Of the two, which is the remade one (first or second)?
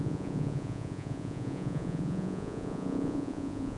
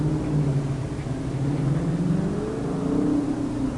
first